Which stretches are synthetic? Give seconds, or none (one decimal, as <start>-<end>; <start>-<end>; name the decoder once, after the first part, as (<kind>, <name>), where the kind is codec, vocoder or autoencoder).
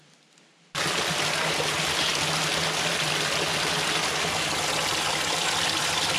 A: none